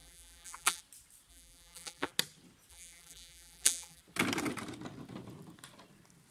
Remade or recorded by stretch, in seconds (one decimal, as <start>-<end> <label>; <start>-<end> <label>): 0.0-0.8 remade; 0.8-1.3 recorded; 1.3-2.1 remade; 2.1-2.7 recorded; 2.7-4.0 remade; 4.0-6.3 recorded